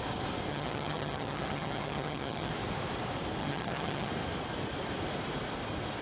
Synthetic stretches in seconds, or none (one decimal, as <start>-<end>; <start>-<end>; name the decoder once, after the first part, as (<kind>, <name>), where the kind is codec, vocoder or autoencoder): 0.5-2.5 (vocoder, HiFi-GAN); 3.4-4.1